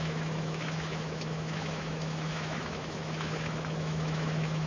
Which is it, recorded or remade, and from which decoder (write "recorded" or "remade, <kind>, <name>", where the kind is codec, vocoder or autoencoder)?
remade, autoencoder, DAC-VAE